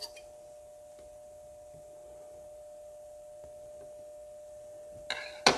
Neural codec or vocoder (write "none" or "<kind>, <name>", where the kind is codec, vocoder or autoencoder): none